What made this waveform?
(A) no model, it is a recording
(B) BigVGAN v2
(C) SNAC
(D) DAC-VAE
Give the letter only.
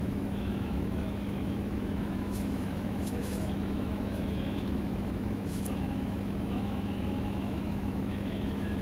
D